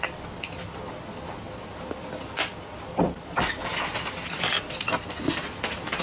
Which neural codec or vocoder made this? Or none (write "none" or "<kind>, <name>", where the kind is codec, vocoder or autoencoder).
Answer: none